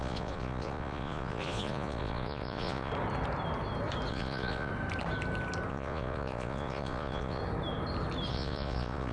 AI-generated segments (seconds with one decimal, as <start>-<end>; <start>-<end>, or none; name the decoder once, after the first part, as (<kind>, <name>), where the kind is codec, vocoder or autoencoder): 0.0-2.9 (vocoder, Vocos); 4.1-4.7; 5.7-7.4; 8.3-9.1